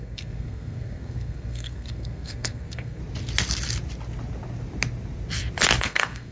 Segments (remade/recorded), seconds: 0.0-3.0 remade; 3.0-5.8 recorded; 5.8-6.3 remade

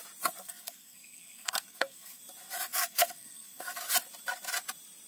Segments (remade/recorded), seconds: 0.0-0.4 recorded; 0.4-2.2 remade; 2.2-2.7 recorded; 2.7-3.8 remade; 3.8-5.1 recorded

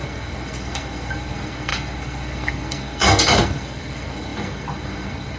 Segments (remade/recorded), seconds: 0.0-5.4 remade

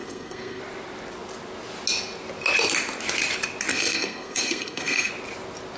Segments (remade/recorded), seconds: 0.0-0.6 remade; 0.6-3.7 recorded; 3.7-5.1 remade; 5.1-5.8 recorded

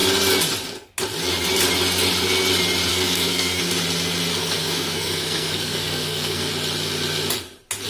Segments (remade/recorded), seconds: 0.0-2.9 recorded; 2.9-3.6 remade; 3.6-4.3 recorded; 4.3-6.5 remade; 6.5-7.9 recorded

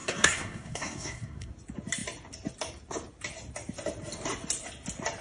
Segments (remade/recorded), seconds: 0.0-1.5 remade; 1.5-5.2 recorded

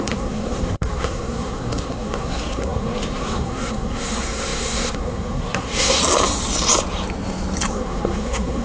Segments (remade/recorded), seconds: 0.0-6.0 remade; 6.0-7.7 recorded; 7.7-8.6 remade

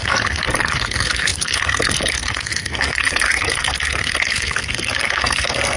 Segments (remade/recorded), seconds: 0.0-5.8 remade